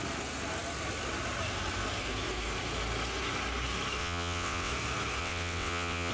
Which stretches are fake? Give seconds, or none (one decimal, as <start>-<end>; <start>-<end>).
4.0-4.7; 5.2-6.1